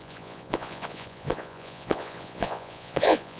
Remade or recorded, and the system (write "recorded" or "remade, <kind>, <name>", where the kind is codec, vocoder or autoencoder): remade, vocoder, Vocos